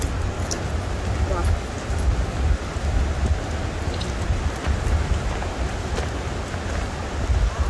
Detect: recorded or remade recorded